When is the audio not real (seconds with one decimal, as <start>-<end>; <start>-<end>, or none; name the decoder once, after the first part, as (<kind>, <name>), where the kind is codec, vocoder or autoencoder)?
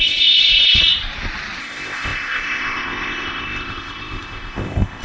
0.0-0.8 (codec, ZipCodec); 1.6-5.0